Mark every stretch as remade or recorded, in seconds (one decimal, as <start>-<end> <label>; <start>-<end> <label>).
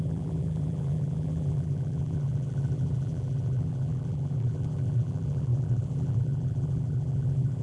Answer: 0.0-7.6 remade